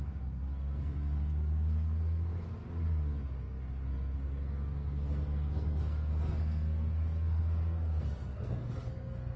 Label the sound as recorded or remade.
remade